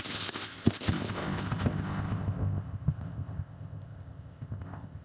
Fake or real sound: fake